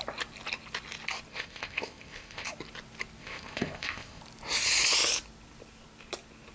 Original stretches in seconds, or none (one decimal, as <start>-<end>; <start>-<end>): 0.0-1.3; 2.5-3.2; 4.2-6.5